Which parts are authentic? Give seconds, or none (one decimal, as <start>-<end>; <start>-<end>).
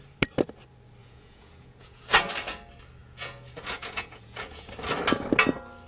0.0-1.0; 2.3-3.0; 4.7-5.9